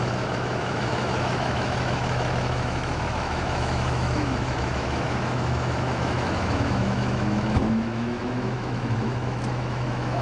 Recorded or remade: remade